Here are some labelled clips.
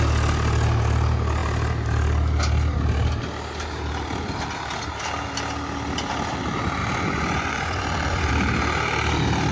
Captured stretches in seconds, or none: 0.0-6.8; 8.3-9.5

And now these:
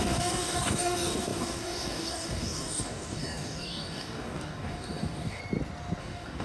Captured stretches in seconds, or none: 5.4-6.0